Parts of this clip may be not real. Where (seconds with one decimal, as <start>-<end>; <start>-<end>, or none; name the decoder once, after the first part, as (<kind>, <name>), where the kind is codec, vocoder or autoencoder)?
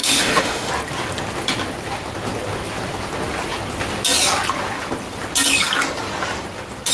0.0-0.7 (autoencoder, DAC-VAE)